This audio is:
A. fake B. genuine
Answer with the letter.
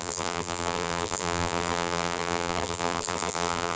A